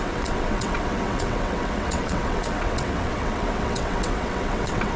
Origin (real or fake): fake